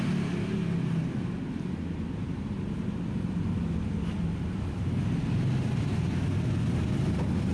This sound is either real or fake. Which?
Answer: real